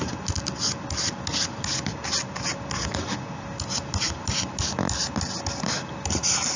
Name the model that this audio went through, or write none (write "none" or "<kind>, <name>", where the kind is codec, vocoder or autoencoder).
none